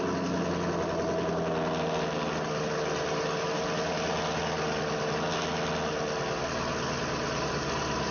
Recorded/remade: recorded